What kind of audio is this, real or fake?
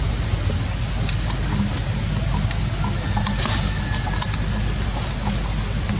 real